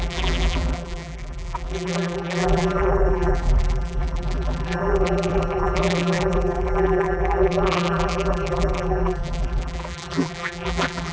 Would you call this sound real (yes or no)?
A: no